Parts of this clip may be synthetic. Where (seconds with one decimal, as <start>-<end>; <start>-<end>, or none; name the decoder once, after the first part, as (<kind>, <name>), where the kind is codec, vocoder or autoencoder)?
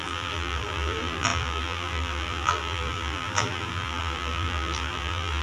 0.0-5.4 (vocoder, BigVGAN v2)